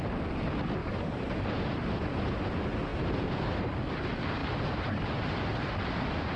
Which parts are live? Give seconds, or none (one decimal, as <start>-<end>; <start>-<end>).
0.0-0.8; 1.4-4.4; 5.7-6.4